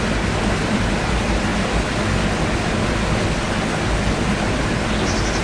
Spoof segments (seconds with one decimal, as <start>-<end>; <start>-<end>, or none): none